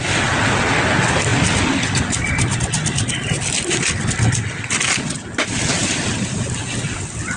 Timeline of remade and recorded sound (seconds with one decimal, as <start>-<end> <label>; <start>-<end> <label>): 0.0-5.8 recorded; 5.8-6.4 remade; 6.4-7.4 recorded

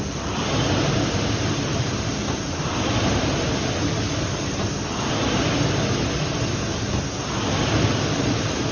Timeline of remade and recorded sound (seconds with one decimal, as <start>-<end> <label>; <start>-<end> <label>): 0.0-1.7 recorded; 1.7-3.6 remade; 3.6-8.7 recorded